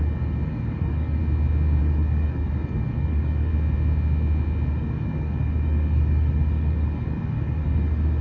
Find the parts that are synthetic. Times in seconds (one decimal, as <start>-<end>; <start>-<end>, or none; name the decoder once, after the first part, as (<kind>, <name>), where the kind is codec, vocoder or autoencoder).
0.0-1.2 (codec, DAC); 1.8-3.5; 4.7-8.2